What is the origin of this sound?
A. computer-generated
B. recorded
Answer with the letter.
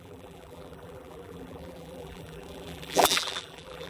A